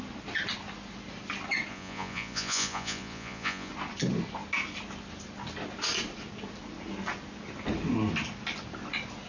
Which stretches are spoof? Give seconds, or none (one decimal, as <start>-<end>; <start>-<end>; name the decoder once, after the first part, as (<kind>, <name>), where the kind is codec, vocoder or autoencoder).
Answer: 1.7-3.7 (vocoder, Vocos)